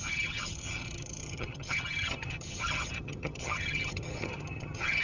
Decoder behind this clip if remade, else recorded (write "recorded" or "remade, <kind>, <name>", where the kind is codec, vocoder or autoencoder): remade, vocoder, HiFi-GAN